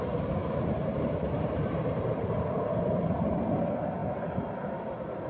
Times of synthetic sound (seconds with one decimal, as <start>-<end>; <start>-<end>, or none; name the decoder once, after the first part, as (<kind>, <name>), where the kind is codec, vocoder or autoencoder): 0.4-3.6 (vocoder, BigVGAN v2)